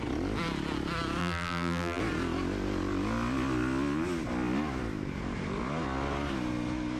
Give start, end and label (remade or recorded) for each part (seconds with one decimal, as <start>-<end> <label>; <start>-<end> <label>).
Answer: 0.0-1.2 recorded; 1.2-2.0 remade; 2.0-7.0 recorded